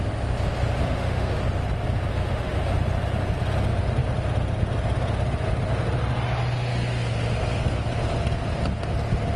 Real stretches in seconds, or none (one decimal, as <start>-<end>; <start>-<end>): 0.0-0.8; 1.4-2.1; 2.6-9.4